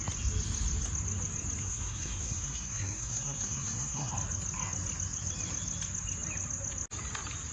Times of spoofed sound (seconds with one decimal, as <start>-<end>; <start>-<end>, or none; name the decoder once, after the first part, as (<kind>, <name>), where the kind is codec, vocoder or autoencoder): 1.6-4.1 (codec, SNAC)